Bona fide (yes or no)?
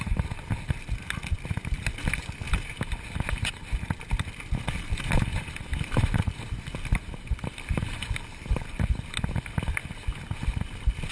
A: yes